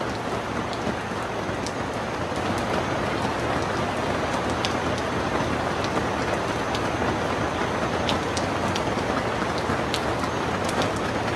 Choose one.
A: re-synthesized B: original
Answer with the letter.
B